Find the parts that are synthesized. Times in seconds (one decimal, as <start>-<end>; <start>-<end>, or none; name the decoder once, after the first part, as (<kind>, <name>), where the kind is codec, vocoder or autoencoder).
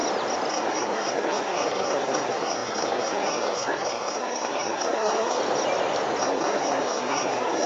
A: 0.5-5.4 (codec, SNAC); 6.2-7.7